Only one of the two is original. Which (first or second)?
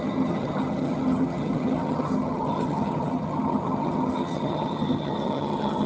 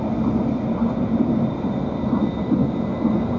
second